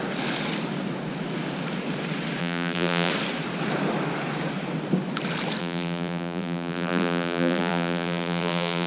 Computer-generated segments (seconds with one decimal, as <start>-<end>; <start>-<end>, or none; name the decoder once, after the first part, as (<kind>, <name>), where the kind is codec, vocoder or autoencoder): 2.4-3.1 (vocoder, BigVGAN v2); 5.6-8.9

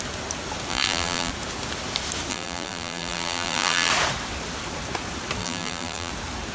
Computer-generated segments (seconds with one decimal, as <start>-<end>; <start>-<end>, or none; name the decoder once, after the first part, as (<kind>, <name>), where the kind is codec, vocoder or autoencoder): 0.7-1.3 (vocoder, BigVGAN v2); 2.3-3.9; 5.4-6.1

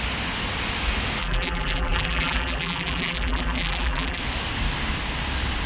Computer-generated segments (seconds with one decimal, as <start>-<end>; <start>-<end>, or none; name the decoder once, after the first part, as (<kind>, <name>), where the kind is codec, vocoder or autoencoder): 1.2-4.2 (vocoder, BigVGAN v2)

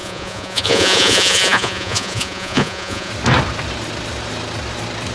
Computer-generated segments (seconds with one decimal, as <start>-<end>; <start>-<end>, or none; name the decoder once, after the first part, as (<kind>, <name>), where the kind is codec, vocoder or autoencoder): 0.0-3.1 (vocoder, Vocos)

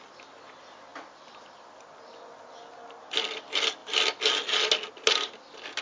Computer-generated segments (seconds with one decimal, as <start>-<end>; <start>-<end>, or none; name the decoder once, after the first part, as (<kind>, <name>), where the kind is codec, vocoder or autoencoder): none